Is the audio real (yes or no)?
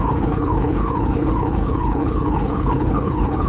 no